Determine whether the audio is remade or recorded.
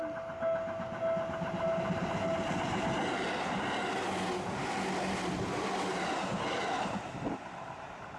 recorded